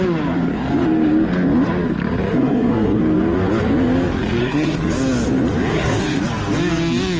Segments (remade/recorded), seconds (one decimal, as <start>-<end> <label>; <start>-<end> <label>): 0.0-2.3 recorded; 2.3-3.0 remade; 3.0-4.4 recorded; 4.4-4.9 remade; 4.9-5.7 recorded; 5.7-6.2 remade; 6.2-7.2 recorded